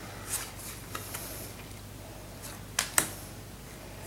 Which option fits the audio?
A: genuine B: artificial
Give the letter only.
A